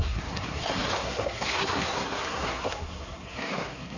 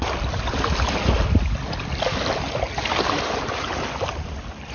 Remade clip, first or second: first